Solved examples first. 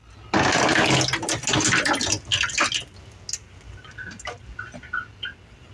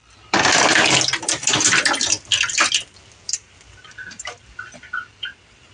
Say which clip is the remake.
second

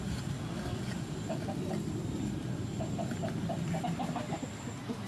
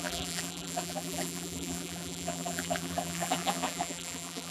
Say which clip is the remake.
second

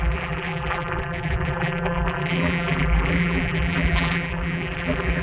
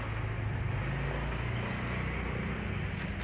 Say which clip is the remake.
first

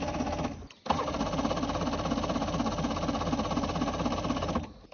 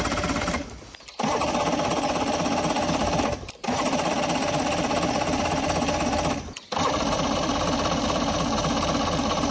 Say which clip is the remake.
second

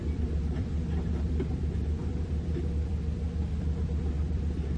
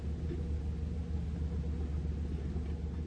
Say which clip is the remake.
first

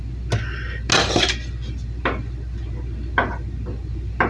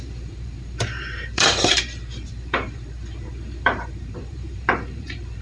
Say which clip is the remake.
second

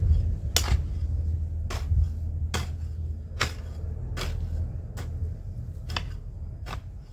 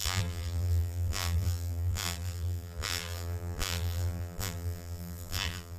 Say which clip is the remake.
second